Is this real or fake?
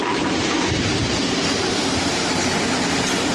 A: fake